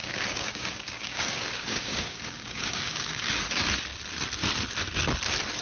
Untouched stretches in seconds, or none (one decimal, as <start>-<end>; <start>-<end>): 3.4-5.6